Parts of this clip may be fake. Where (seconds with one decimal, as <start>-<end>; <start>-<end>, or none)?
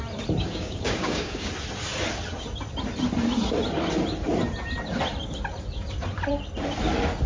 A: 0.4-1.5